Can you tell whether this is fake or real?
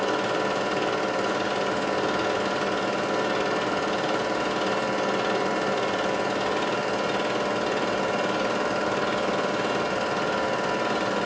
real